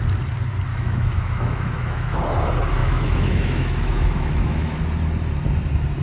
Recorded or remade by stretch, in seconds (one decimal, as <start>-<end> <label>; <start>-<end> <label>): 0.0-0.7 recorded; 0.7-2.2 remade; 2.2-2.8 recorded; 2.8-4.8 remade; 4.8-6.0 recorded